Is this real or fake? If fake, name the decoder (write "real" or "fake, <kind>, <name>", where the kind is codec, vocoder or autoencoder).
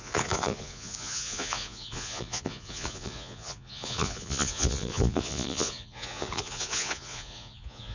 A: fake, vocoder, Vocos